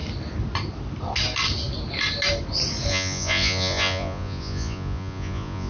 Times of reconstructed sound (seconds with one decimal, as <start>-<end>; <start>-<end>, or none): 2.9-5.7